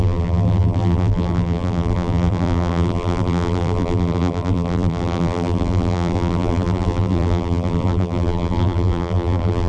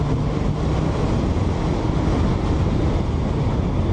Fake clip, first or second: first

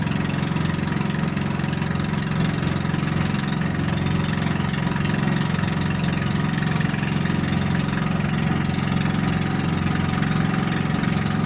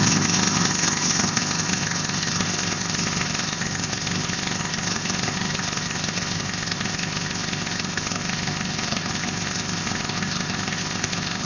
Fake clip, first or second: second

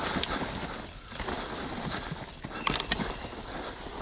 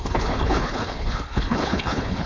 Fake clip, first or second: second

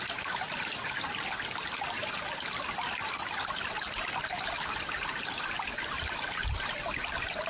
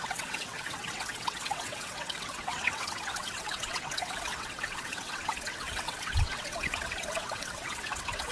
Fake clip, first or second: second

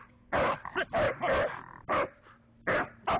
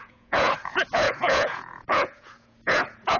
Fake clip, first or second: second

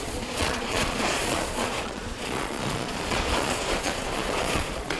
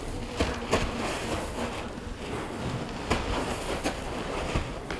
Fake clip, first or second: first